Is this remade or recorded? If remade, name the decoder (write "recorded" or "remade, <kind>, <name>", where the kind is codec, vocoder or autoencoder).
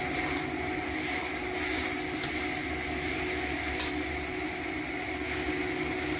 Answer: recorded